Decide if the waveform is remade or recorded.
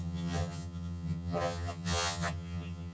remade